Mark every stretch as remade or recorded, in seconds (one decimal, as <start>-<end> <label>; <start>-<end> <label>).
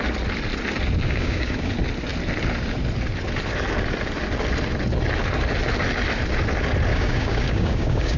0.0-1.0 recorded; 1.0-1.7 remade; 1.7-6.9 recorded; 6.9-8.2 remade